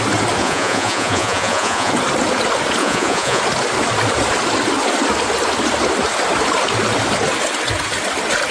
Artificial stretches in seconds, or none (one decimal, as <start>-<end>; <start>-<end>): 0.4-1.9; 2.8-3.4